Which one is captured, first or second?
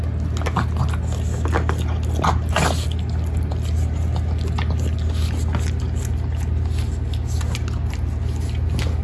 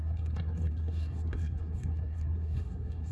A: first